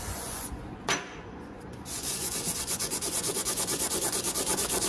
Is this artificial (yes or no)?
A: yes